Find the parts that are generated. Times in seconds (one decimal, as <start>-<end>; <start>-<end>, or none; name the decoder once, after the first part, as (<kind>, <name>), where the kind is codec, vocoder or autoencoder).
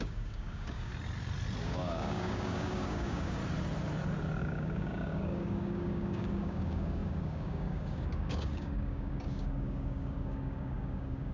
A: 0.0-0.9 (codec, DAC); 1.6-3.4; 4.4-11.3